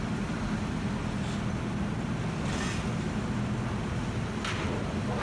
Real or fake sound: real